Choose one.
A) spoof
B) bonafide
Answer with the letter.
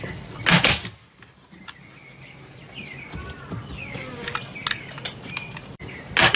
B